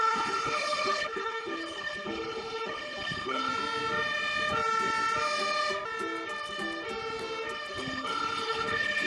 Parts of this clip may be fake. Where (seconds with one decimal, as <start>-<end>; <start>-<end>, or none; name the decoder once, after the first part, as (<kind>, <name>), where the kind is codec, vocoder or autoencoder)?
0.0-3.5 (codec, HILCodec); 7.7-9.1